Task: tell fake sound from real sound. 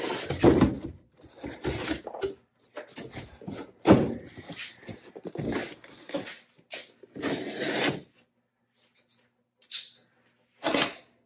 real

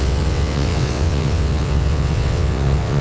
fake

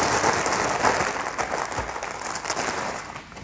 real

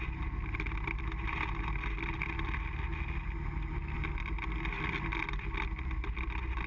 real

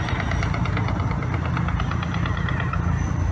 real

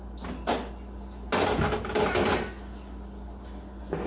real